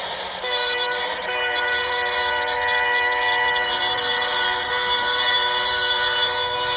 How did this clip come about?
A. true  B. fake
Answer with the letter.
B